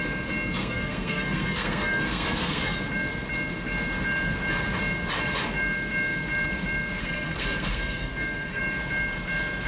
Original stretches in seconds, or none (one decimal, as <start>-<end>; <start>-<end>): 0.0-0.6; 2.8-7.0; 8.6-9.7